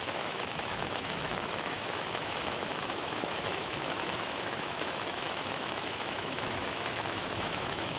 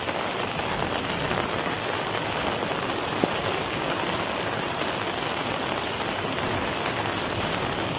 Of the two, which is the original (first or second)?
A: second